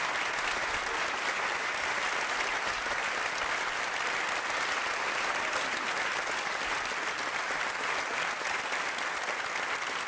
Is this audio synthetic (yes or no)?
no